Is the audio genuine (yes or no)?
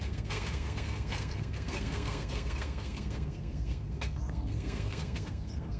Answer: no